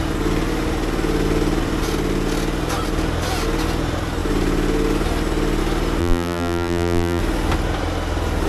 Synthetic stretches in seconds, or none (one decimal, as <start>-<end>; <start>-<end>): 6.0-7.2